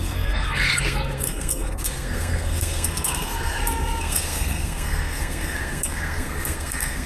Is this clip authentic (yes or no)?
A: no